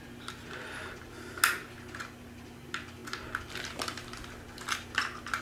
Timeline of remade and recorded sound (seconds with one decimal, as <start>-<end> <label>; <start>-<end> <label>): 0.0-5.4 recorded